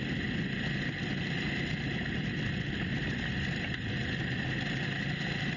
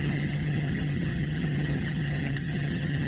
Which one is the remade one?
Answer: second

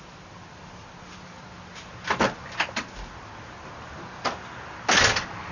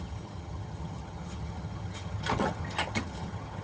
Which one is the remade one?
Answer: second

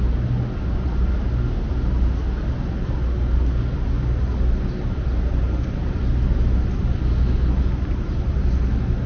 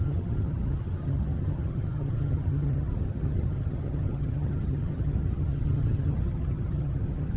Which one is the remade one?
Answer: second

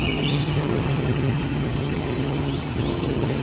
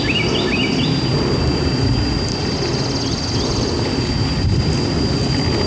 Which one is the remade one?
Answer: first